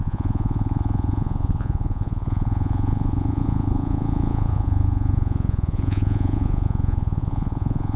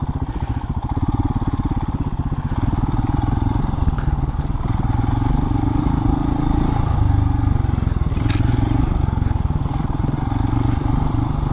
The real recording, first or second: second